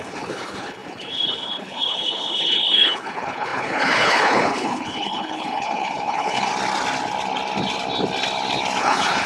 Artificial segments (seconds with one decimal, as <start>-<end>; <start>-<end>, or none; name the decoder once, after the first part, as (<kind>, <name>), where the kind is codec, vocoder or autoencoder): 0.0-6.5 (codec, HILCodec); 8.8-9.3